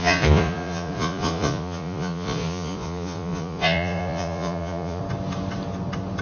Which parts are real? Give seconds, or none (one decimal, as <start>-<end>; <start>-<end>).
5.0-6.2